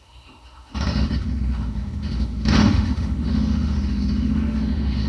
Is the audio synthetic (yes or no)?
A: yes